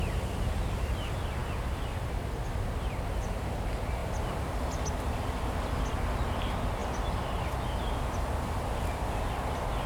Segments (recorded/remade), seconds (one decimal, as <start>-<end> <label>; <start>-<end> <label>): 0.0-9.9 recorded